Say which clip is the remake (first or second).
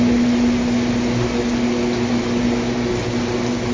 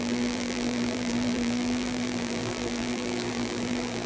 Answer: second